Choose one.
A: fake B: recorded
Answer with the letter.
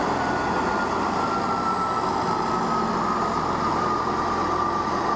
B